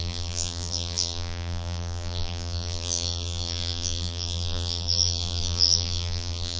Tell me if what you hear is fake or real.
fake